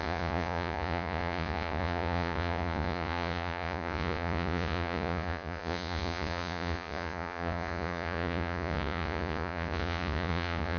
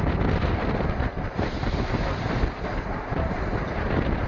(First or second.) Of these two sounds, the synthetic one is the first